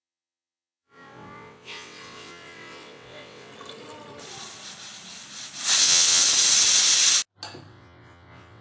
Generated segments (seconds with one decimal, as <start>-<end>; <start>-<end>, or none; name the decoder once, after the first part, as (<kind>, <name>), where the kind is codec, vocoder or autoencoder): 0.0-3.5 (vocoder, WaveNeXt); 5.8-6.2; 7.7-8.6